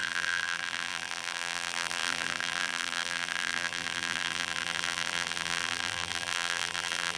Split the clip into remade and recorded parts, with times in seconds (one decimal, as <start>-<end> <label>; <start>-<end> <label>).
0.0-7.2 remade